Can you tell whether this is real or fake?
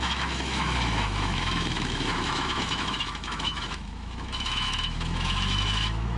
fake